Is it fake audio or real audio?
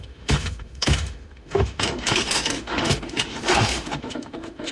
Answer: fake